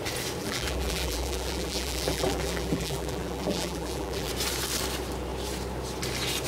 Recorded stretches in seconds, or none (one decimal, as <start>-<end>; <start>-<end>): 0.0-0.4; 4.3-6.5